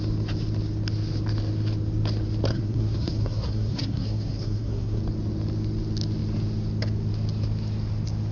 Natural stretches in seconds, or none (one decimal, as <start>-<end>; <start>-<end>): 0.0-2.5; 5.0-8.3